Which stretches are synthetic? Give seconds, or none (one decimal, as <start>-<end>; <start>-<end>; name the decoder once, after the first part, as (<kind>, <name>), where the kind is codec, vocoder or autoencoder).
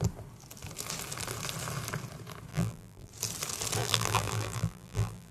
2.5-3.1 (vocoder, BigVGAN v2); 3.8-5.3